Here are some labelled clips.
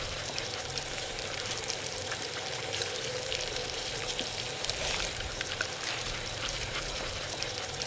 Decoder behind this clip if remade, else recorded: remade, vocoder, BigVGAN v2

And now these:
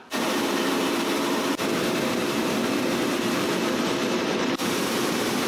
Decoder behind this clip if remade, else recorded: remade, vocoder, BigVGAN v2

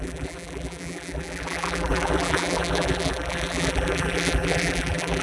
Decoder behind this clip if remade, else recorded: remade, vocoder, BigVGAN v2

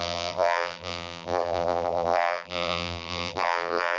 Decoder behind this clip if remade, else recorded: remade, vocoder, BigVGAN v2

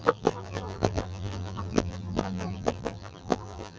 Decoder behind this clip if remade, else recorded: remade, vocoder, BigVGAN v2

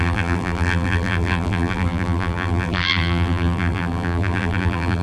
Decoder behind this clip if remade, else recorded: remade, vocoder, BigVGAN v2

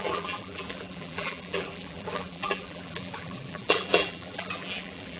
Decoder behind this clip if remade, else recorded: remade, vocoder, BigVGAN v2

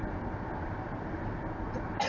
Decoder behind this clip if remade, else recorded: recorded